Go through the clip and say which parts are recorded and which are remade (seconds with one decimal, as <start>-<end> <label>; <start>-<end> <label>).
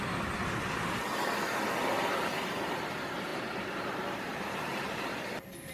0.0-0.4 remade; 0.4-2.5 recorded; 2.5-5.7 remade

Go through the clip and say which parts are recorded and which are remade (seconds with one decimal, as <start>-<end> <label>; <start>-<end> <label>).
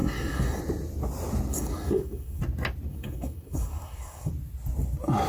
0.0-0.6 remade; 0.6-1.5 recorded; 1.5-2.4 remade; 2.4-2.9 recorded; 2.9-4.3 remade; 4.3-5.3 recorded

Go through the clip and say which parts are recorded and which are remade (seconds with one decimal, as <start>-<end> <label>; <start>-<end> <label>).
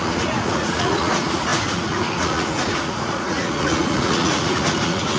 0.0-5.2 remade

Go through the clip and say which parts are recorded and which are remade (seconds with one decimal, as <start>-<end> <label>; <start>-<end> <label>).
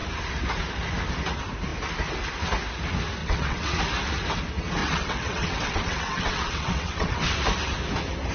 0.0-3.2 recorded; 3.2-3.8 remade; 3.8-4.8 recorded; 4.8-7.3 remade; 7.3-8.3 recorded